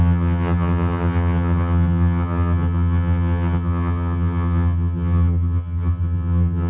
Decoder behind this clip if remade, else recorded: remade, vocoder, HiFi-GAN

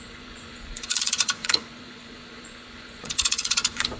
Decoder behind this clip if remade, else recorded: remade, vocoder, Vocos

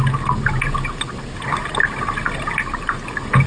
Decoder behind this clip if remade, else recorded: recorded